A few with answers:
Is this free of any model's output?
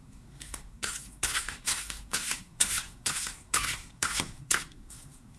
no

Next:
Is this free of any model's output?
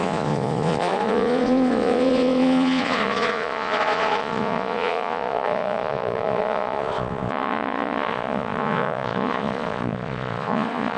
no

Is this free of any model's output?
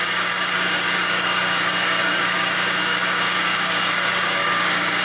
no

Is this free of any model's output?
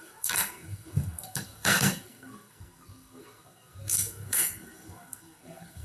no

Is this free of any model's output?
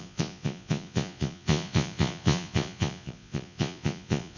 no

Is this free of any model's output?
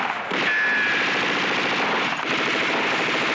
yes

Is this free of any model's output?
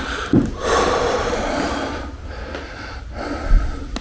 yes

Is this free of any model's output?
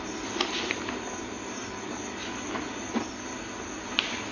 yes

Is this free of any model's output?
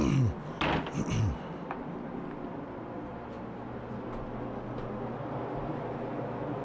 yes